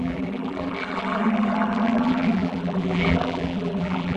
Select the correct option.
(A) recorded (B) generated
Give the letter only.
B